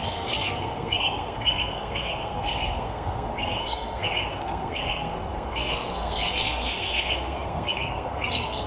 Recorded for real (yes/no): no